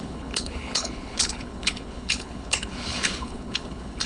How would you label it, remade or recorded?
remade